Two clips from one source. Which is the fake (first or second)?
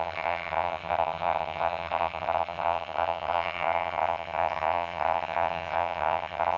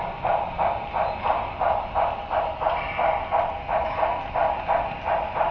first